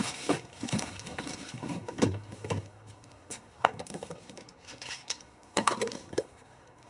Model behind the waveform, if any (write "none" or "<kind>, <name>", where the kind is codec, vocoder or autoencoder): codec, SNAC